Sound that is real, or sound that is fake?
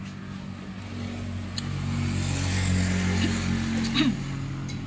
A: real